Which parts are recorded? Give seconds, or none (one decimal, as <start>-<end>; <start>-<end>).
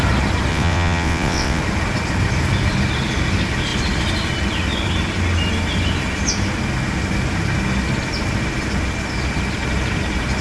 0.0-0.5; 1.6-10.4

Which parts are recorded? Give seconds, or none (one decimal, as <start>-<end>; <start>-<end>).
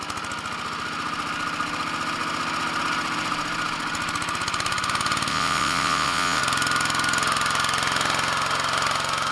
0.0-5.3; 6.4-9.3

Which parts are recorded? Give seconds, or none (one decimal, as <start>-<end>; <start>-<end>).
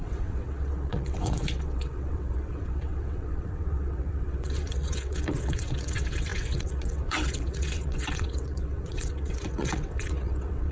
none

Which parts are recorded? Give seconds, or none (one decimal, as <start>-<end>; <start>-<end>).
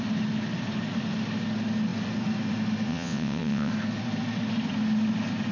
0.0-2.9; 3.7-5.5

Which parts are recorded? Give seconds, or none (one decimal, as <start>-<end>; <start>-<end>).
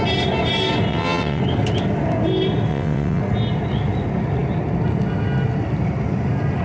0.0-0.9; 1.4-2.7; 3.2-6.6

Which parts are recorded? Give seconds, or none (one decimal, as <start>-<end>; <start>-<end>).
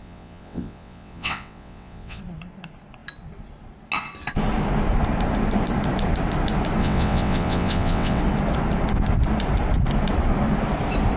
2.2-6.8; 8.2-11.2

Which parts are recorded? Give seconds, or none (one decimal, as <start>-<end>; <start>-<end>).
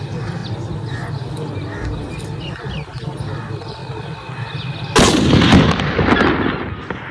0.0-7.1